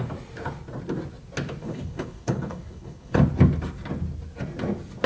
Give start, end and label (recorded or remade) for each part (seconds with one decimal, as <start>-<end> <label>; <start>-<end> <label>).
0.0-1.6 recorded; 1.6-3.2 remade; 3.2-5.1 recorded